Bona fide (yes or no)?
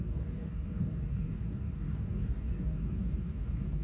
no